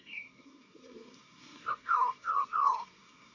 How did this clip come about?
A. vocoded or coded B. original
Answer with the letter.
A